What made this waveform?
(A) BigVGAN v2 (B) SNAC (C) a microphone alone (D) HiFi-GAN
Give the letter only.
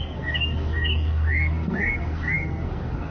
B